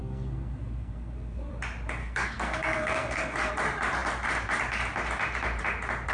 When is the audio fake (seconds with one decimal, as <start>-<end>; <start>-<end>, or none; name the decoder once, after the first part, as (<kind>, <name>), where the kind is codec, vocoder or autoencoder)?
0.0-1.5 (codec, SNAC); 2.0-3.5